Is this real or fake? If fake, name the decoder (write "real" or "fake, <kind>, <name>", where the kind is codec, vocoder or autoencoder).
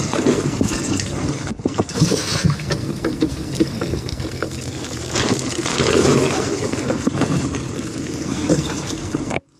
fake, codec, SNAC